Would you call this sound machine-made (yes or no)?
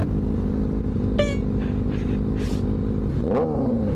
no